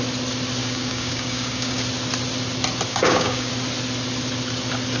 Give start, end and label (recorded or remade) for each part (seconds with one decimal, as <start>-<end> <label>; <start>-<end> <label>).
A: 0.0-0.6 recorded; 0.6-1.8 remade; 1.8-2.9 recorded; 2.9-3.5 remade; 3.5-5.0 recorded